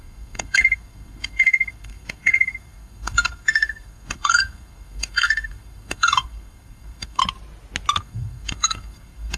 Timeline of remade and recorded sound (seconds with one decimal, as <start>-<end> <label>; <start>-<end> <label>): 0.0-7.2 remade; 7.2-8.0 recorded; 8.0-9.4 remade